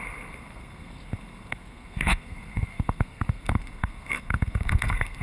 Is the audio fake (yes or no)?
yes